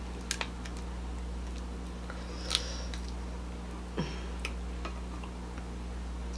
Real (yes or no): yes